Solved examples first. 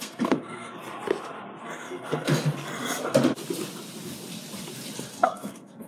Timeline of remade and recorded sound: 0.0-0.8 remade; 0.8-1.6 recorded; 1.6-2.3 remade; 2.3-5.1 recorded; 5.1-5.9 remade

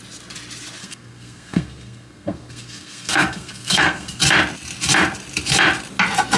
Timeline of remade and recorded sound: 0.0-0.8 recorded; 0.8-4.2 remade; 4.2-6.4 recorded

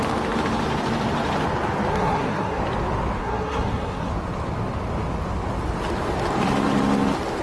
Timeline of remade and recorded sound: 0.0-1.9 recorded; 1.9-2.6 remade; 2.6-3.2 recorded; 3.2-4.1 remade; 4.1-7.4 recorded